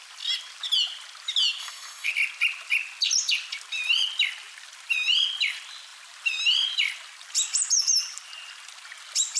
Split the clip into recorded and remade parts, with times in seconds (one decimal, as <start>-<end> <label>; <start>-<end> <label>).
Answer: 0.0-1.6 recorded; 1.6-2.1 remade; 2.1-9.4 recorded